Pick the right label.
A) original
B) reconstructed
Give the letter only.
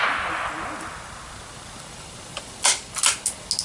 A